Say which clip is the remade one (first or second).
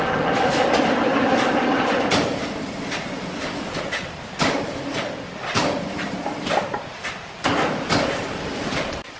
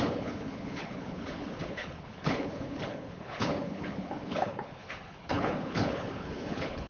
second